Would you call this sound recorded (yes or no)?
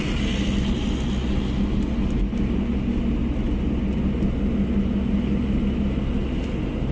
yes